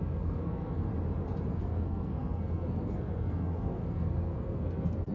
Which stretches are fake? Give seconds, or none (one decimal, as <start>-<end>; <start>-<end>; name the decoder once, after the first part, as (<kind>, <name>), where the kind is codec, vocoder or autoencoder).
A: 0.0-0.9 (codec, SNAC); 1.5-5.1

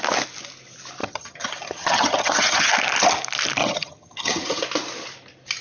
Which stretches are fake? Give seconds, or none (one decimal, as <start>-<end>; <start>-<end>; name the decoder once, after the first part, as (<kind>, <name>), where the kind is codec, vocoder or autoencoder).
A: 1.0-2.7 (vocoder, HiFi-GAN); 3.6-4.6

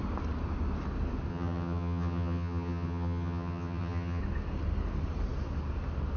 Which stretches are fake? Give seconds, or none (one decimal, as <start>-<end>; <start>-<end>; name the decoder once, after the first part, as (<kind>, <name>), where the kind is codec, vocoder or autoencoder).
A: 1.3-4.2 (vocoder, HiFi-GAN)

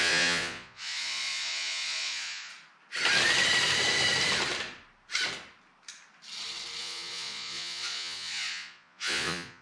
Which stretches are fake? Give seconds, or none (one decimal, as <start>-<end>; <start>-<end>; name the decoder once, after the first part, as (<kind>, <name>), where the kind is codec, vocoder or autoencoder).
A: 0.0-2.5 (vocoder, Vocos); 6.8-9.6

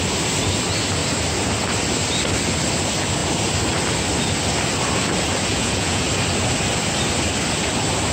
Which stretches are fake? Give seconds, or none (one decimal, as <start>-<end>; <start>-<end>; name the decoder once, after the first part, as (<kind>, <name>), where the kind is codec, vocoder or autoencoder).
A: 5.5-6.1 (vocoder, Vocos)